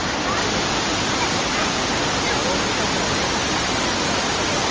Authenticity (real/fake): real